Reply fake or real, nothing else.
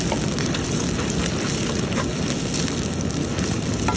real